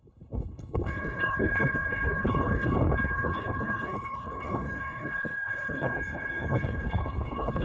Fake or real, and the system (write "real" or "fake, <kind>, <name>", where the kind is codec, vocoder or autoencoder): fake, codec, HILCodec